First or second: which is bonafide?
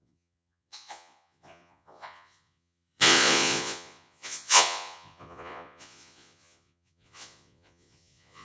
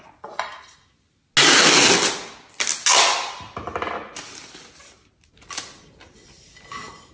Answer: second